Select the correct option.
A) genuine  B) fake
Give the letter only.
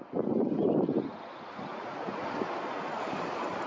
A